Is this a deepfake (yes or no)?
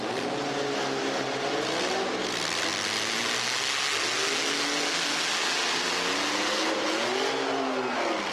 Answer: no